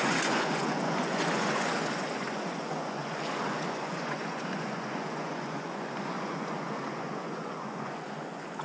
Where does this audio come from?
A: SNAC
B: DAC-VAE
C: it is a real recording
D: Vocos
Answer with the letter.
D